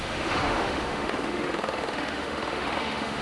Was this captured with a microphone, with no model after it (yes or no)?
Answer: no